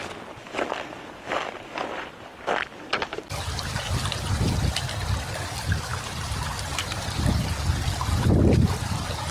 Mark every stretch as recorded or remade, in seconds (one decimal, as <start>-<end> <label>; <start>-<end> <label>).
0.0-9.3 recorded